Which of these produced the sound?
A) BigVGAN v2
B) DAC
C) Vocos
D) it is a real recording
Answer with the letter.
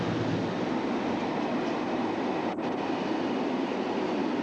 D